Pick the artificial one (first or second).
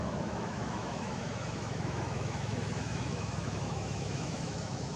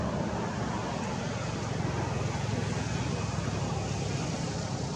first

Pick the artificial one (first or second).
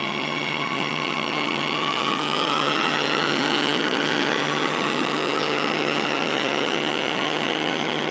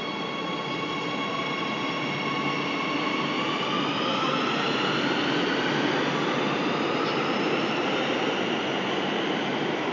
first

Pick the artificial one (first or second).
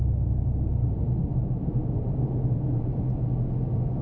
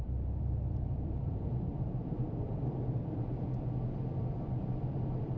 second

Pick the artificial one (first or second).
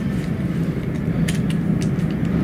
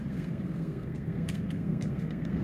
second